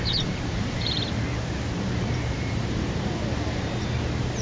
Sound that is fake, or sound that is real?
fake